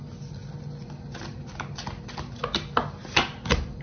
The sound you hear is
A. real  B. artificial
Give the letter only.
A